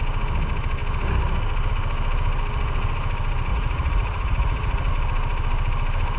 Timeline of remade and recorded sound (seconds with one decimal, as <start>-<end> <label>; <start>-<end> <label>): 0.0-3.5 recorded; 3.5-4.9 remade; 4.9-6.2 recorded